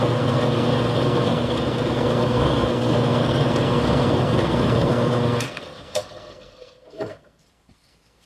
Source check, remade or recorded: remade